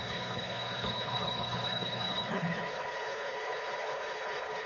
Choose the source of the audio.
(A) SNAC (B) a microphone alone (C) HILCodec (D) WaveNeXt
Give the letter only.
C